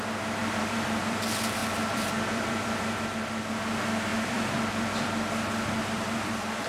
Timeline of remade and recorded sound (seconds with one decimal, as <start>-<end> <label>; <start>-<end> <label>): 0.0-0.4 recorded; 0.4-1.2 remade; 1.2-1.6 recorded; 1.6-3.5 remade; 3.5-4.1 recorded; 4.1-5.1 remade; 5.1-5.8 recorded; 5.8-6.7 remade

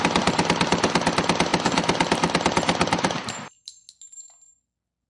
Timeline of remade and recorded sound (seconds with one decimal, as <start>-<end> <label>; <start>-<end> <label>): 0.0-1.5 recorded; 1.5-3.7 remade; 3.7-5.1 recorded

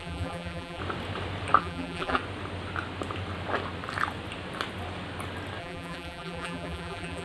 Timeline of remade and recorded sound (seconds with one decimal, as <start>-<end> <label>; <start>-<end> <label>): 0.0-0.8 remade; 0.8-1.6 recorded; 1.6-2.2 remade; 2.2-5.6 recorded; 5.6-7.2 remade

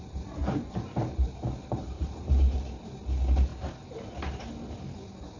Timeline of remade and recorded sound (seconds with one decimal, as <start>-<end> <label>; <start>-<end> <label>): 0.0-0.4 recorded; 0.4-3.0 remade; 3.0-5.4 recorded

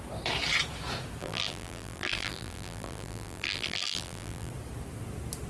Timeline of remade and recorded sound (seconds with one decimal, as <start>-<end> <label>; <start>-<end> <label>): 0.0-1.2 recorded; 1.2-4.5 remade; 4.5-5.5 recorded